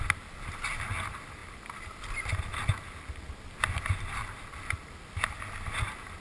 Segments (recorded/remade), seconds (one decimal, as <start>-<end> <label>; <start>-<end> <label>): 0.0-6.2 recorded

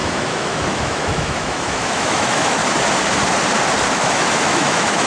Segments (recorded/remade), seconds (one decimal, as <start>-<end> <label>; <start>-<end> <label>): 0.0-2.6 remade; 2.6-3.9 recorded; 3.9-5.1 remade

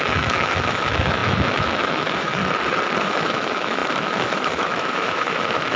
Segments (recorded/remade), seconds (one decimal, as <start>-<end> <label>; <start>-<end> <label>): 0.0-2.4 remade; 2.4-3.0 recorded; 3.0-5.8 remade